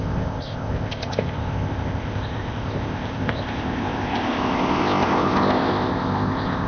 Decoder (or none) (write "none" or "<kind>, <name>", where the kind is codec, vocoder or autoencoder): codec, ZipCodec